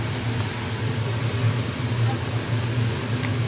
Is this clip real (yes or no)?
yes